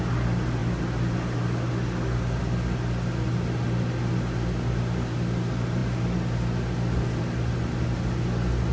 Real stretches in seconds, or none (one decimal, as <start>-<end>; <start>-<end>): 0.0-8.7